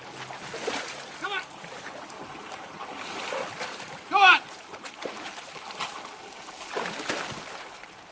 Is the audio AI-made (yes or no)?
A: no